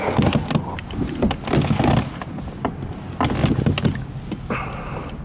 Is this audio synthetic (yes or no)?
no